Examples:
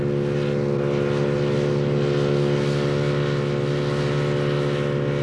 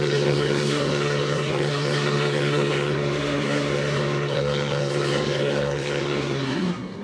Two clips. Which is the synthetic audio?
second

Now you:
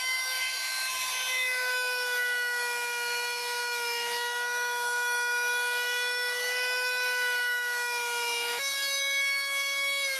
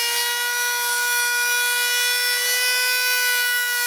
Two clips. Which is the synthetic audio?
first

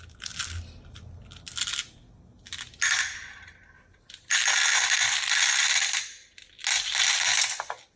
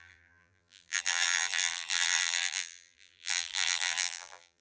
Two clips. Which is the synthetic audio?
second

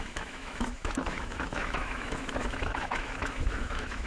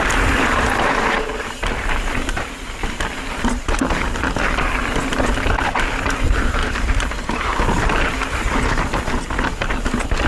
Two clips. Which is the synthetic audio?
first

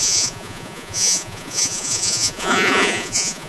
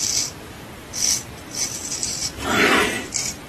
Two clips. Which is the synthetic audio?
first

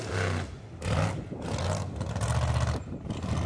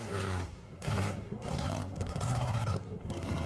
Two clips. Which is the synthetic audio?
second